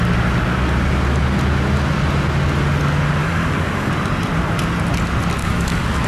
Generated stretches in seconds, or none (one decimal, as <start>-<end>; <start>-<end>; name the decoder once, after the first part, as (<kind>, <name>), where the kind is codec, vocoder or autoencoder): 3.2-3.9 (codec, DAC); 5.4-6.1